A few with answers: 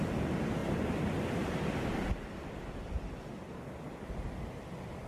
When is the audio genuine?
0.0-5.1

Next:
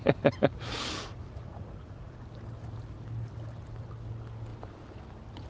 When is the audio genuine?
0.0-1.1; 2.2-5.5